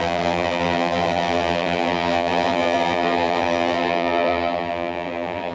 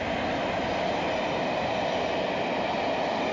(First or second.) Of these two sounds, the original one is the second